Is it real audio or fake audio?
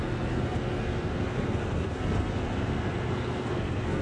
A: fake